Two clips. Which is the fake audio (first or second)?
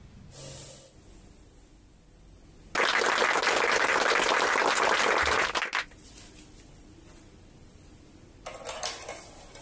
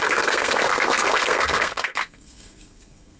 second